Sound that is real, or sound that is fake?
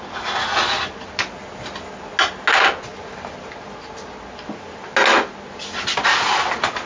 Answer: real